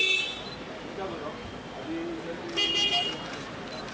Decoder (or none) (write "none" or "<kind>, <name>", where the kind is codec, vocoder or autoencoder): none